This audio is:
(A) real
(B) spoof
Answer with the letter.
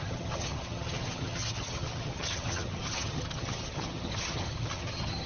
B